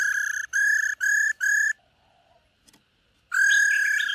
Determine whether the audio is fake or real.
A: real